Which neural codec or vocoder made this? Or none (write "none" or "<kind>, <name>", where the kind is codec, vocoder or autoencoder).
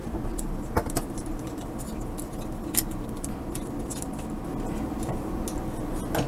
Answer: none